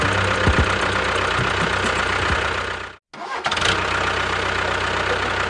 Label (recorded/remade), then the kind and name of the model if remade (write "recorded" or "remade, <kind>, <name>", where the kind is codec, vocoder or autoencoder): recorded